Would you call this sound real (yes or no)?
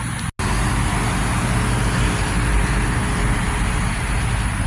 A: yes